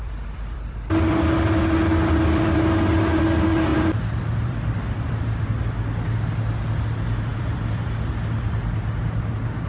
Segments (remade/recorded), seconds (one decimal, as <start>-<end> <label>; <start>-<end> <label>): 0.0-1.3 remade; 1.3-3.7 recorded; 3.7-5.6 remade; 5.6-7.3 recorded; 7.3-8.8 remade; 8.8-9.7 recorded